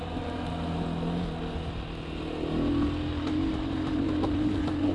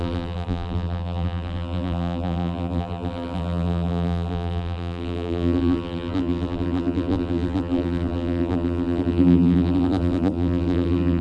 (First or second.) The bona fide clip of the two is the first